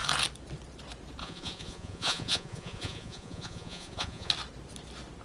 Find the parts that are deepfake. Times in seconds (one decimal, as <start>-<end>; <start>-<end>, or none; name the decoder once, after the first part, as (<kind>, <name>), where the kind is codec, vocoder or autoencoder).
1.2-4.3 (vocoder, Vocos)